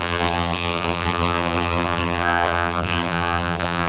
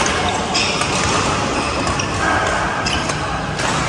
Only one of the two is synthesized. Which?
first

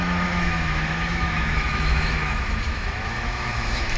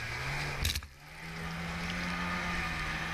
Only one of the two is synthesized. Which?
first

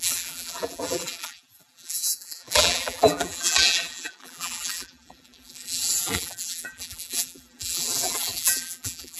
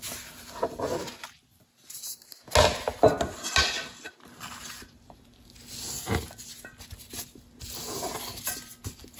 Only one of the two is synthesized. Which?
first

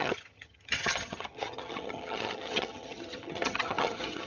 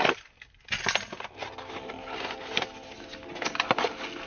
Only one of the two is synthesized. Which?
first